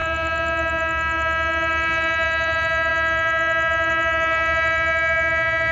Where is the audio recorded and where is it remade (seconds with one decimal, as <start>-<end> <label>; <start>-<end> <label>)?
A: 0.0-5.7 recorded